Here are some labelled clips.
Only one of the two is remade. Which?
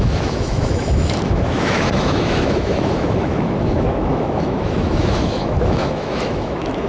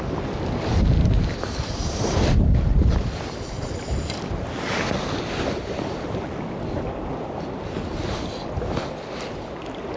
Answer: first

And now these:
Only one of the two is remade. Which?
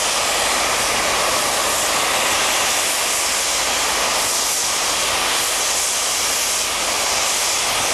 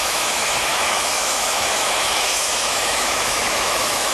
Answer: second